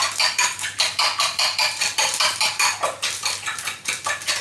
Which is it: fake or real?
real